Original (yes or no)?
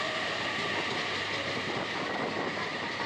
no